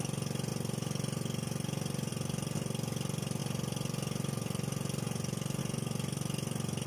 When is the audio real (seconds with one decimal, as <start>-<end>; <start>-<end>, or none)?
0.0-6.9